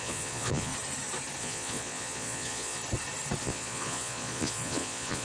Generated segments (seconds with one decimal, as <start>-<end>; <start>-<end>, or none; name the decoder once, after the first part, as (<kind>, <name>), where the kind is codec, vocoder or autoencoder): 0.0-0.7 (vocoder, Vocos); 1.4-2.8; 3.4-5.2